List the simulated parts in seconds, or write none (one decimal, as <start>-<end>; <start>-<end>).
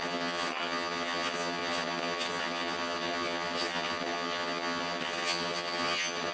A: 0.0-6.3